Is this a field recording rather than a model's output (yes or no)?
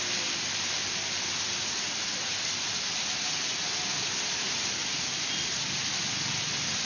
yes